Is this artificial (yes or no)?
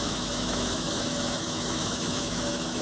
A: yes